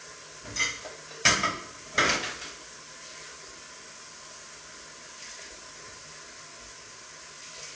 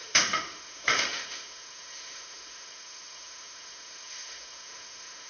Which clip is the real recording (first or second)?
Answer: first